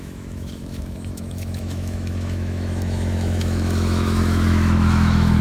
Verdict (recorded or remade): remade